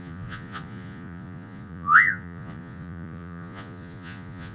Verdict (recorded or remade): remade